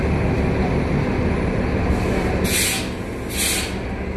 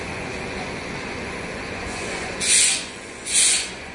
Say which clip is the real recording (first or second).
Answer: first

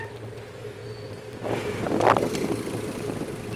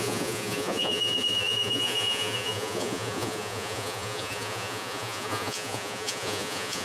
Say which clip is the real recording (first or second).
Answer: first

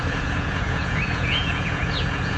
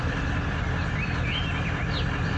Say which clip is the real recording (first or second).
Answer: second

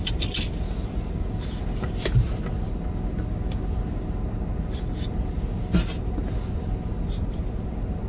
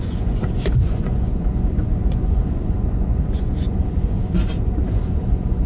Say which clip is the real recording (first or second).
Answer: first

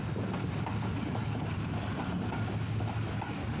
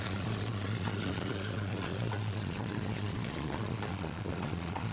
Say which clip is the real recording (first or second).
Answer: first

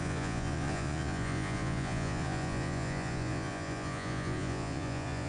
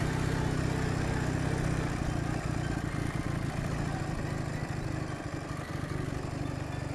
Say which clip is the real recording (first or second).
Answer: second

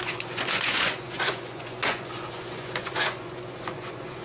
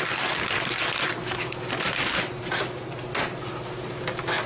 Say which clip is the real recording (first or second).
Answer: second